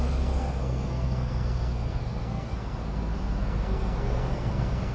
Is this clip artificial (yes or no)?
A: yes